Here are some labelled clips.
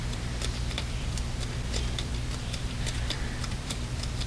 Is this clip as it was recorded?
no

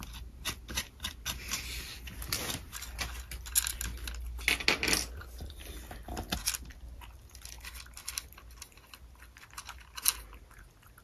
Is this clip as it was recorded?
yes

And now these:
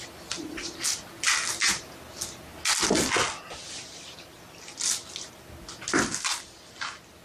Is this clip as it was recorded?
yes